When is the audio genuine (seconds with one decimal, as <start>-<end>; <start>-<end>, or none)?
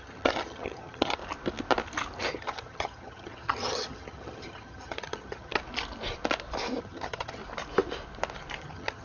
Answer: 1.2-2.3; 5.6-6.8; 7.4-8.6